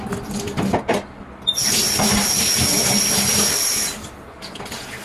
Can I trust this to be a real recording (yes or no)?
yes